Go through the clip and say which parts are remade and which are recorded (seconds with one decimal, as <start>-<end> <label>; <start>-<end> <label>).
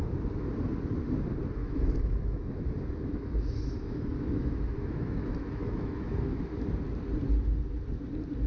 0.0-1.6 recorded; 1.6-6.4 remade; 6.4-8.5 recorded